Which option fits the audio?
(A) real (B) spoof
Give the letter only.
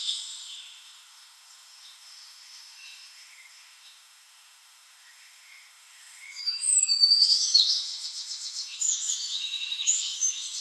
B